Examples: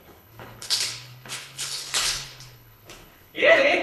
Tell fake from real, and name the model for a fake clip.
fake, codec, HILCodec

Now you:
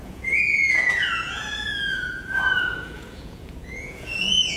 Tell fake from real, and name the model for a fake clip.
fake, vocoder, Vocos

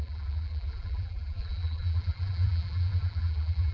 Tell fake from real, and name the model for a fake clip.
fake, vocoder, BigVGAN v2